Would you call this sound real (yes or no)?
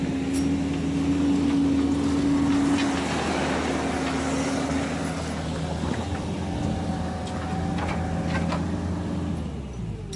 yes